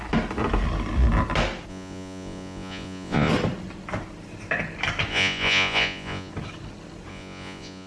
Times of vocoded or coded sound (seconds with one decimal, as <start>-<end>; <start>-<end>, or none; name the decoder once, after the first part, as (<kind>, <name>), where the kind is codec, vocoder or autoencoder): 1.7-3.3 (vocoder, Vocos); 5.1-6.3; 7.1-7.9